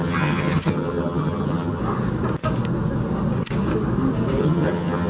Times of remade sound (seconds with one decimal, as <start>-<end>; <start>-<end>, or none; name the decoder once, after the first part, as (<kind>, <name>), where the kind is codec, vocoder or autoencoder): 0.0-1.8 (vocoder, HiFi-GAN); 4.4-5.1